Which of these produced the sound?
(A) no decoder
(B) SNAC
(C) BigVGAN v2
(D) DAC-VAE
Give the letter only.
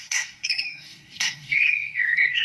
B